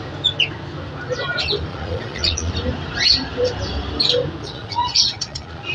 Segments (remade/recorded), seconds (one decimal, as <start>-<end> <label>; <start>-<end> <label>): 0.0-1.7 recorded; 1.7-2.5 remade; 2.5-4.4 recorded; 4.4-5.7 remade